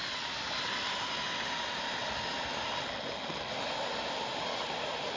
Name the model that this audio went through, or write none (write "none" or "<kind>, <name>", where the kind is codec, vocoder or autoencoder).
none